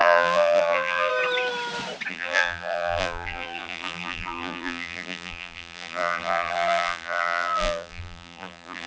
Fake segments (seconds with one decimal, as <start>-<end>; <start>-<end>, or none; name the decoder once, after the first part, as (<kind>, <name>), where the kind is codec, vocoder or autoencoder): 0.0-1.1 (vocoder, BigVGAN v2); 2.1-8.9